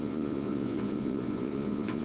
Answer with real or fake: fake